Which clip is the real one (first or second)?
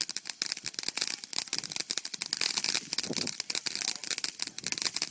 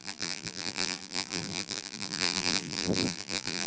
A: first